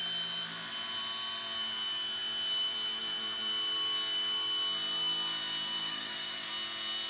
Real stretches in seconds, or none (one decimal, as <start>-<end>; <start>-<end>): 0.0-5.8; 6.5-7.1